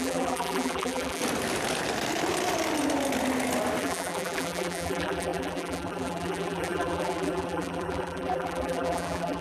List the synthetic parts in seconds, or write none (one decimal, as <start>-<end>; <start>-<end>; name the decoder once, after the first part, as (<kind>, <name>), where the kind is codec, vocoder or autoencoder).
0.0-1.2 (vocoder, BigVGAN v2); 3.8-9.4